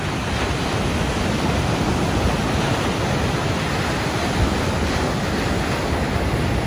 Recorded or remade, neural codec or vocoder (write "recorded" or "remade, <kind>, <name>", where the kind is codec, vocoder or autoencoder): recorded